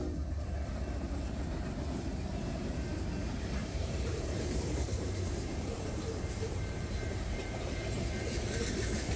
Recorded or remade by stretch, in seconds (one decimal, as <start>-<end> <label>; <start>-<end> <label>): 0.0-3.6 recorded; 3.6-8.6 remade; 8.6-9.2 recorded